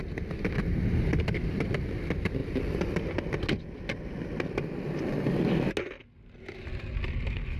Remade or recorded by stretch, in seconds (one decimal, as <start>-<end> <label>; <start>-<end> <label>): 0.0-7.6 recorded